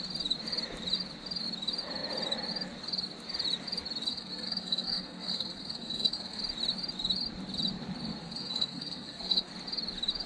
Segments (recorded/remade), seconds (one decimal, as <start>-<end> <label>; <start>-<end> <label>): 0.0-4.1 recorded; 4.1-6.4 remade; 6.4-8.2 recorded; 8.2-9.5 remade; 9.5-10.3 recorded